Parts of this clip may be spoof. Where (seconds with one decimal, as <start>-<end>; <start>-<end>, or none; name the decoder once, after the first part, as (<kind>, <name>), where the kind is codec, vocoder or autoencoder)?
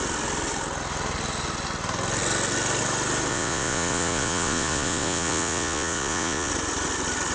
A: 3.3-6.5 (vocoder, Vocos)